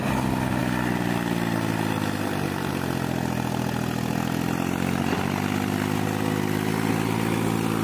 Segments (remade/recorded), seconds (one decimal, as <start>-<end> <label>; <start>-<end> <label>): 0.0-7.8 recorded